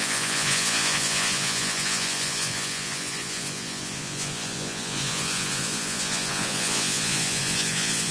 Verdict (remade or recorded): remade